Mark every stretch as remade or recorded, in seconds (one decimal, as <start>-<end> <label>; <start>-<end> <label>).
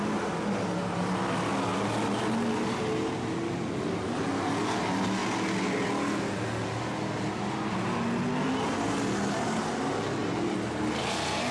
0.0-11.5 recorded